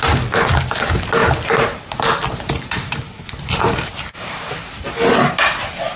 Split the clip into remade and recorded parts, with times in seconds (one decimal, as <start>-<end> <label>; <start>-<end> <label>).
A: 0.0-1.2 recorded; 1.2-4.6 remade; 4.6-6.0 recorded